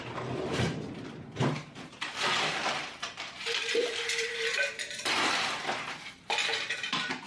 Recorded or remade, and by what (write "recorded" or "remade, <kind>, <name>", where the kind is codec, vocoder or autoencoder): remade, vocoder, BigVGAN v2